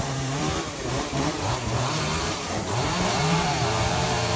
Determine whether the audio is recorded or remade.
remade